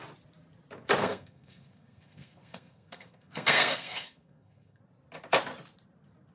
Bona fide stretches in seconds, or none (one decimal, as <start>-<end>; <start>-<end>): 0.0-1.0; 4.8-6.3